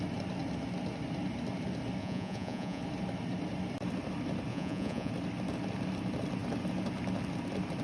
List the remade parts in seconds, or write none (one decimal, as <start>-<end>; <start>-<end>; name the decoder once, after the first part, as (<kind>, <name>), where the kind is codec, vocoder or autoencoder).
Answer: 2.0-2.8 (vocoder, Vocos); 4.5-5.1